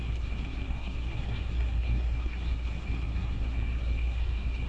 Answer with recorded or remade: remade